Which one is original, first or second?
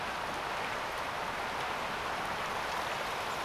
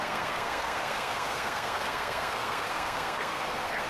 first